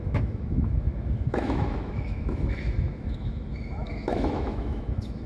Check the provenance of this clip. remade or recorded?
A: remade